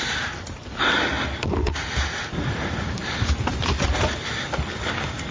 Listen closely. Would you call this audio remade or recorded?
recorded